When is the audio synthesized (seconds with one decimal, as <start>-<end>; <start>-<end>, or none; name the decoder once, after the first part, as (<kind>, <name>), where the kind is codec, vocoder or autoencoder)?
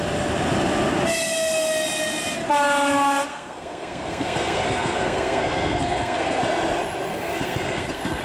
3.3-6.4 (codec, SNAC); 7.1-8.2